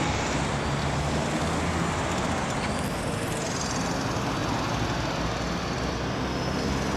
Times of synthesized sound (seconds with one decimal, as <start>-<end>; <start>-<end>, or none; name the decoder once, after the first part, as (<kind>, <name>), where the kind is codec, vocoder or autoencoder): none